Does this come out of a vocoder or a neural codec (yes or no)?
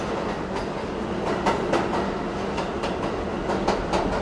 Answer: no